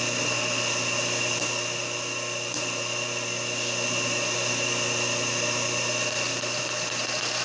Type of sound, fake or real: real